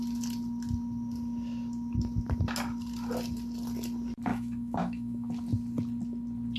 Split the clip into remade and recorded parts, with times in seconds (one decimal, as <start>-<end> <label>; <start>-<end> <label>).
0.0-4.3 recorded; 4.3-5.3 remade; 5.3-6.6 recorded